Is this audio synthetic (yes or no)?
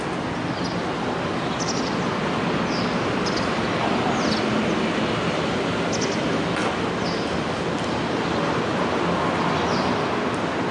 no